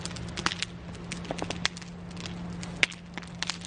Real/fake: real